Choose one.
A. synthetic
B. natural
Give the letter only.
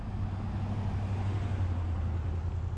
B